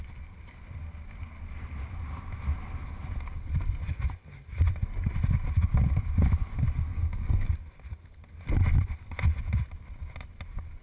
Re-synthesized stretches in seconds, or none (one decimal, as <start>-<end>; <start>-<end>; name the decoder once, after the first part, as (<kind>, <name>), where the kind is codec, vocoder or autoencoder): 6.9-7.5 (codec, DAC)